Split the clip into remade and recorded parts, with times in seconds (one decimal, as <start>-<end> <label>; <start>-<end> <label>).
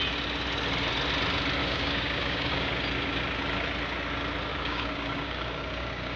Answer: 0.0-1.6 recorded; 1.6-2.7 remade; 2.7-4.5 recorded; 4.5-6.2 remade